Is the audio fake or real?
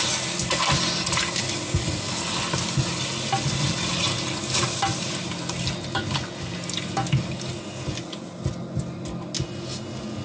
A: real